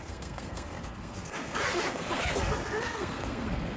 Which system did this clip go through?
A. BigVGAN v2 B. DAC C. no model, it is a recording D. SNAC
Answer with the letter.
D